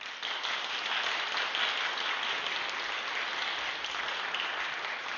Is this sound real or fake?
real